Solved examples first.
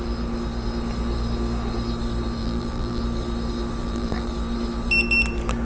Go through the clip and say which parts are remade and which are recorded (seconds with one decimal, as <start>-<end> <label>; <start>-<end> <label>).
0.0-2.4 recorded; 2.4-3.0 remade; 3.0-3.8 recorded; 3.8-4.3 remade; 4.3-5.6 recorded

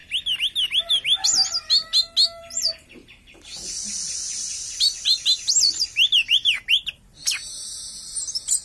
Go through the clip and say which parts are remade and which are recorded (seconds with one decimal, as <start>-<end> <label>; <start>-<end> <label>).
0.0-2.4 recorded; 2.4-3.5 remade; 3.5-4.3 recorded; 4.3-8.6 remade

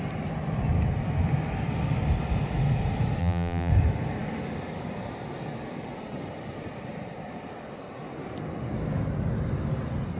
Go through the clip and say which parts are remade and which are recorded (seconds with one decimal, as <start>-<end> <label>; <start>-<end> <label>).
0.0-3.2 recorded; 3.2-3.7 remade; 3.7-10.2 recorded

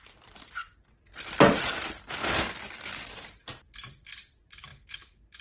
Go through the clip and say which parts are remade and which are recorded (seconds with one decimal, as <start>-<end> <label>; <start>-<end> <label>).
0.0-0.6 remade; 0.6-2.7 recorded; 2.7-4.7 remade; 4.7-5.4 recorded